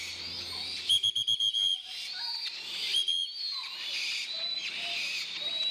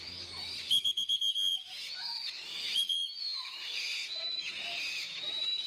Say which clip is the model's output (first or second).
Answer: second